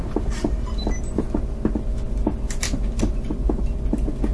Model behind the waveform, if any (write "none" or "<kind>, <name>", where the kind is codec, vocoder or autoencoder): none